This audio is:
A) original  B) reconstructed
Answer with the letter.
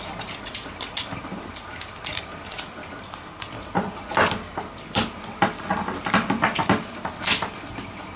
A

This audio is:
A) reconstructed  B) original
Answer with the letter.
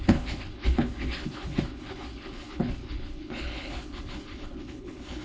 A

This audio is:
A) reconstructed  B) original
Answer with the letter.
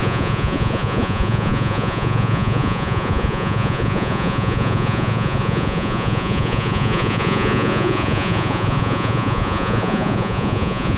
A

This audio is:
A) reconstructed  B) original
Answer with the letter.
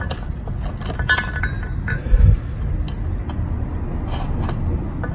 B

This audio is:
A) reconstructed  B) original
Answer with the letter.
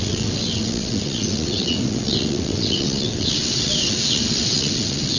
A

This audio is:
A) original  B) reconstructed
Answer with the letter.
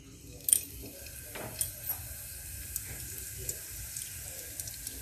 A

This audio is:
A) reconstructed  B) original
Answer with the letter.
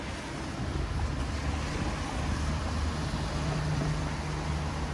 B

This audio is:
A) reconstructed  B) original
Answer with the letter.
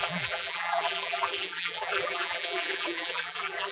A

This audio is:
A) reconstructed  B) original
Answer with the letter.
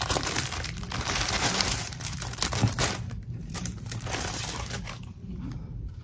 A